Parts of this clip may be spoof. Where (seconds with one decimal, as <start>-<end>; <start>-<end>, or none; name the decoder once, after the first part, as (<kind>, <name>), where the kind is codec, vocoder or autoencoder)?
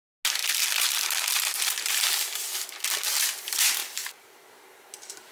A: 0.4-1.3 (vocoder, BigVGAN v2); 3.8-4.5